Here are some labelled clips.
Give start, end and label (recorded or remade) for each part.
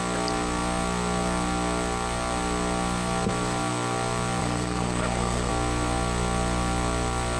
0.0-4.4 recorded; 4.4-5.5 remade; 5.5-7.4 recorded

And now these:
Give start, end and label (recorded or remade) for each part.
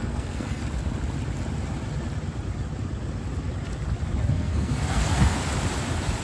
0.0-0.6 remade; 0.6-4.3 recorded; 4.3-5.4 remade; 5.4-6.2 recorded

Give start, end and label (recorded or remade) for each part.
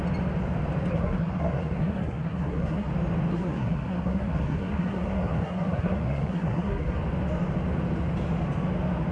0.0-0.9 recorded; 0.9-2.9 remade; 2.9-3.3 recorded; 3.3-7.0 remade; 7.0-9.1 recorded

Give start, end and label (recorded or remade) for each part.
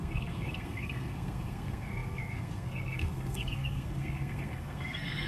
0.0-5.3 remade